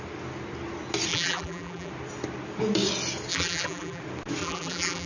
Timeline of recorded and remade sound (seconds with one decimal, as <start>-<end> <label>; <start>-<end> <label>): 0.0-1.1 recorded; 1.1-1.9 remade; 1.9-3.3 recorded; 3.3-4.0 remade; 4.0-4.4 recorded; 4.4-5.1 remade